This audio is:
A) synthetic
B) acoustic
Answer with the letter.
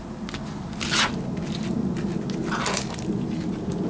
B